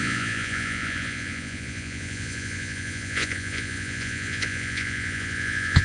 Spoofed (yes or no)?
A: yes